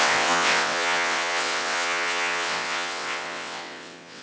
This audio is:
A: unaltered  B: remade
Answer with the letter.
B